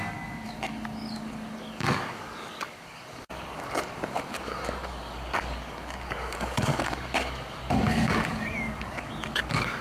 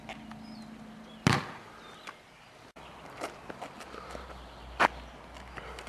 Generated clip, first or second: first